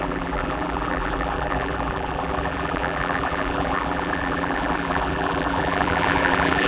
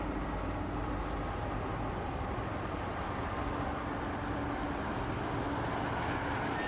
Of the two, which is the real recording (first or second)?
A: second